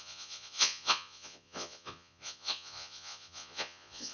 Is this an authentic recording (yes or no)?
no